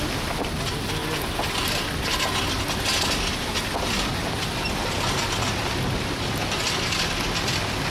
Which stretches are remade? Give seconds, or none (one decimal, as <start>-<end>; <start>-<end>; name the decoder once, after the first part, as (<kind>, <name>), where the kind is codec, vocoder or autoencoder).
none